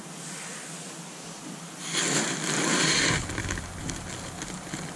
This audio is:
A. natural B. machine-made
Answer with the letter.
A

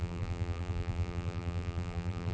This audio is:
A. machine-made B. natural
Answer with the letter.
A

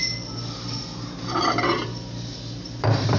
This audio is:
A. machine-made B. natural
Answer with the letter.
A